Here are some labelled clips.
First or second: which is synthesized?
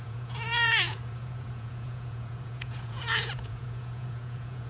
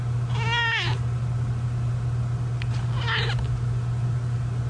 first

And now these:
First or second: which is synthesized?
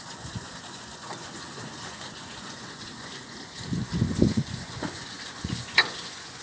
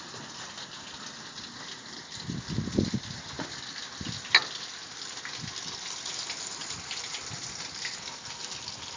first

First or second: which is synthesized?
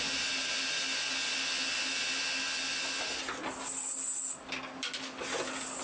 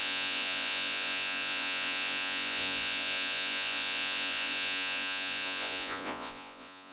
second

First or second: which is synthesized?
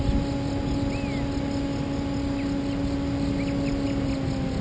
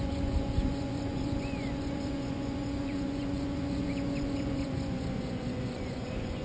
second